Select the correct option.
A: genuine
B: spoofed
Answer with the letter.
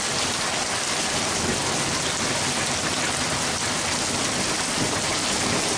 A